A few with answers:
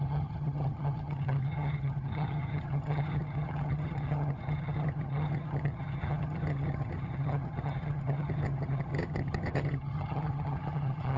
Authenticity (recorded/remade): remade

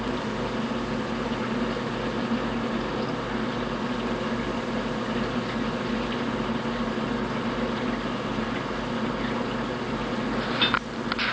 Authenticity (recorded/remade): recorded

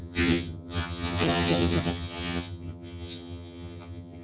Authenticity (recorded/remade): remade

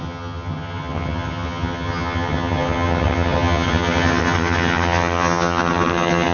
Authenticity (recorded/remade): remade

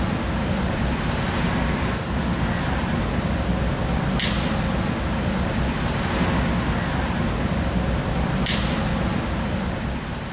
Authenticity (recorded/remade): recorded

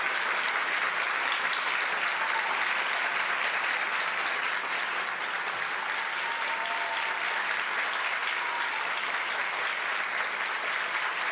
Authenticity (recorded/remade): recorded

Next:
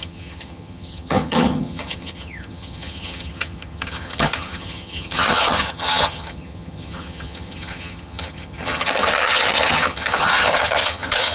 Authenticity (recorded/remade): remade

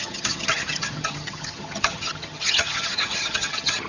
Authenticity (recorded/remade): remade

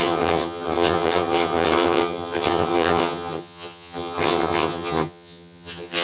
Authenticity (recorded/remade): remade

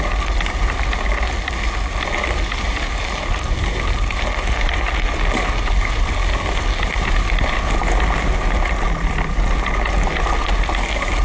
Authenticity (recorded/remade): recorded